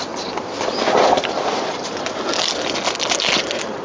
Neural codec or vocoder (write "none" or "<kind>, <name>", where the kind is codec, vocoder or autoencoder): none